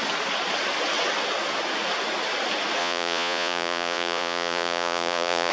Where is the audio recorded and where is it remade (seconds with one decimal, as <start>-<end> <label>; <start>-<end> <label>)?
0.0-2.8 recorded; 2.8-5.5 remade